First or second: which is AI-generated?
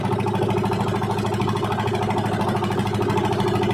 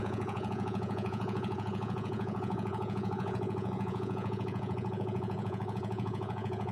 second